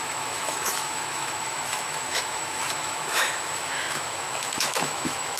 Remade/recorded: remade